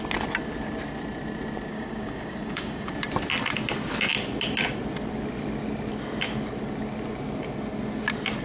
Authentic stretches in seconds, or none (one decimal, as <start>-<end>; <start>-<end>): 0.0-1.7; 2.9-8.4